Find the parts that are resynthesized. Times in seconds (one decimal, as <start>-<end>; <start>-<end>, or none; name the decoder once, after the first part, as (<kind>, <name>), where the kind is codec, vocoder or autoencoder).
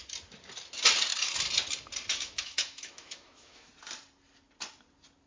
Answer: 2.1-3.7 (autoencoder, DAC-VAE)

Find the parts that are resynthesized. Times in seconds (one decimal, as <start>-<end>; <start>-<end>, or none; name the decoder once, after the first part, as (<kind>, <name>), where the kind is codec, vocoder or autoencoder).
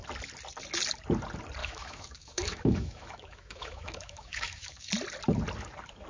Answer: 1.6-4.9 (autoencoder, DAC-VAE)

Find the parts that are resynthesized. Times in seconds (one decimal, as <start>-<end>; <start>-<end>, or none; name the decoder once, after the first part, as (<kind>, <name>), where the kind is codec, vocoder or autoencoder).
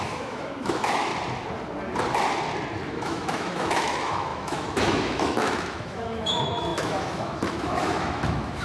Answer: 0.0-1.1 (autoencoder, DAC-VAE); 2.9-8.6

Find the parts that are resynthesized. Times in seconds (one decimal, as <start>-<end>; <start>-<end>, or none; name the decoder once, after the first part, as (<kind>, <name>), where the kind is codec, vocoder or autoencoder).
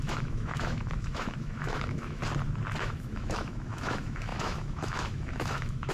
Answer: 0.0-2.2 (autoencoder, DAC-VAE); 2.8-5.9